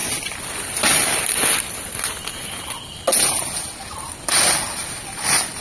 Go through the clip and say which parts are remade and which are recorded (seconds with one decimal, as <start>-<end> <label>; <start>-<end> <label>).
0.0-5.6 recorded